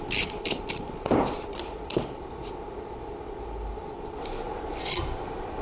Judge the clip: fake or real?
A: real